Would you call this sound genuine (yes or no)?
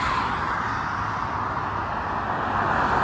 yes